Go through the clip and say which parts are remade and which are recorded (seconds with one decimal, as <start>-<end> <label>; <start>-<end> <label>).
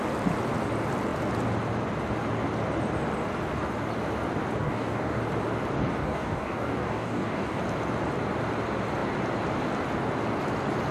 0.0-4.6 recorded; 4.6-5.2 remade; 5.2-6.0 recorded; 6.0-7.6 remade; 7.6-10.9 recorded